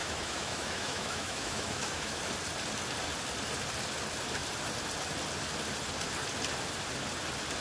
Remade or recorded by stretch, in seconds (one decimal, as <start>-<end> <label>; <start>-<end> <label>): 0.0-2.2 remade; 2.2-7.6 recorded